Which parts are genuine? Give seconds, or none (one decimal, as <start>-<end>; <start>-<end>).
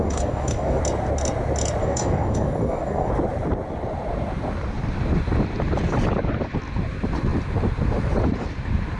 0.8-1.8; 3.1-9.0